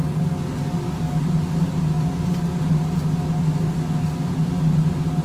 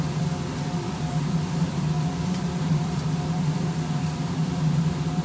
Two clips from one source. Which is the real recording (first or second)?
first